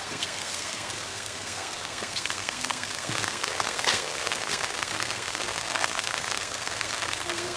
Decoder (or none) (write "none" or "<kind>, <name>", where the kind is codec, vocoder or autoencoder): codec, SNAC